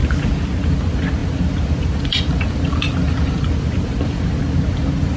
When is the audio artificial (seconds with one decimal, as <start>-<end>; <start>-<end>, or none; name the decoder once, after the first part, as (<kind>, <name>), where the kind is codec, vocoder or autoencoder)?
0.6-5.2 (vocoder, BigVGAN v2)